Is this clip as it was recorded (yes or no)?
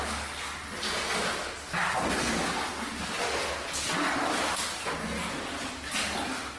yes